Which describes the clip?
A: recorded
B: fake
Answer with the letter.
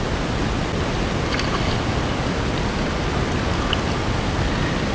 A